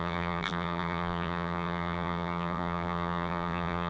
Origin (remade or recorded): remade